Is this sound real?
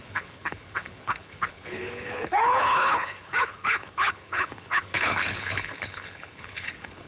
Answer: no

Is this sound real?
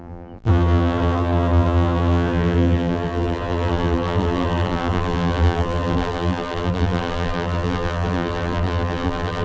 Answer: no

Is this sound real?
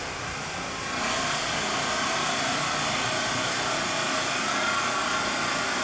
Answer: yes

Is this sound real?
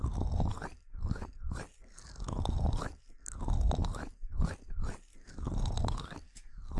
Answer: yes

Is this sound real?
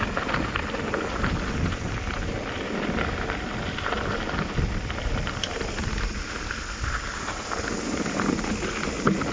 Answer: yes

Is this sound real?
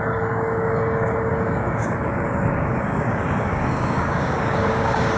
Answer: no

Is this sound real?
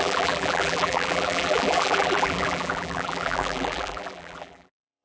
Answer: no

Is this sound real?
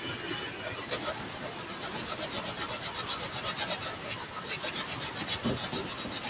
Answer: yes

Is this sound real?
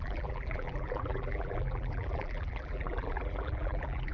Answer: no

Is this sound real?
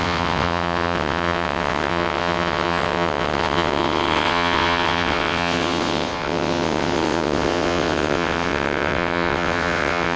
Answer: no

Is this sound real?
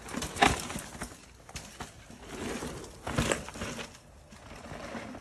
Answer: yes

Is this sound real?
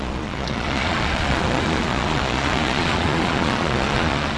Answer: no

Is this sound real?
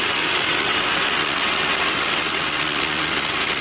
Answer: no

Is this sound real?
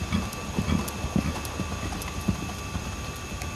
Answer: yes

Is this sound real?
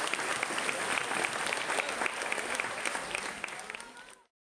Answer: yes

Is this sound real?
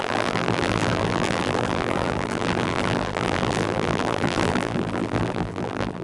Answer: no